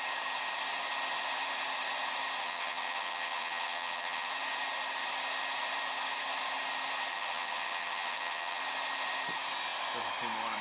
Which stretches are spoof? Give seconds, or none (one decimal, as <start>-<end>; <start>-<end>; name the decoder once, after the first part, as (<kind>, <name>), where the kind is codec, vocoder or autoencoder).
2.4-4.3 (vocoder, HiFi-GAN); 7.1-8.6